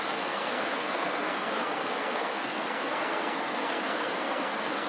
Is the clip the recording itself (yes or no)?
no